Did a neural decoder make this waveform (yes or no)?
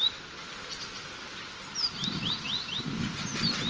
no